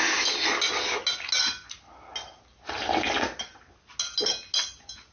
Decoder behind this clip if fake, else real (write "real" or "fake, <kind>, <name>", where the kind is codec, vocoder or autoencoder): real